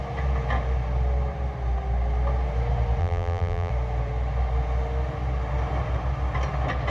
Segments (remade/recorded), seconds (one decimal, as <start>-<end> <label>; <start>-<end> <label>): 0.0-3.0 recorded; 3.0-3.7 remade; 3.7-6.9 recorded